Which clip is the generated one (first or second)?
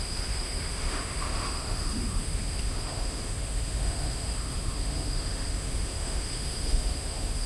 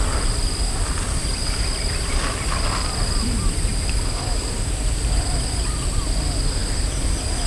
first